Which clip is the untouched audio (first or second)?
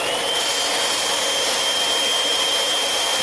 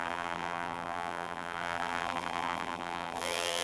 first